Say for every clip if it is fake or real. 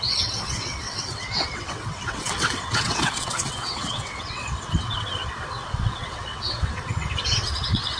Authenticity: fake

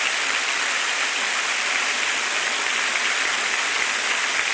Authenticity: real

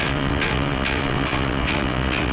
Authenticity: fake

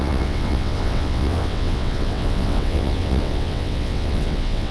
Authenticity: fake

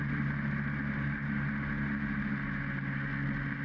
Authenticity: real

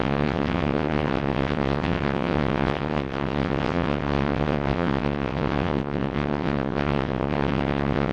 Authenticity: fake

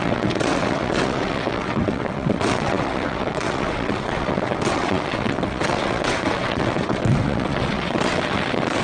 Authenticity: fake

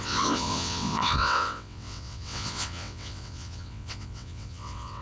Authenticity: fake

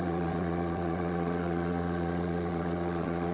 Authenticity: fake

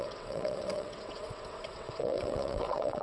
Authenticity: fake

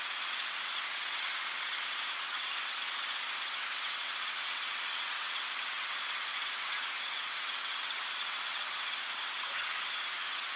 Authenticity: fake